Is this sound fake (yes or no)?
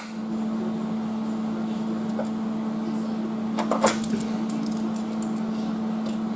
no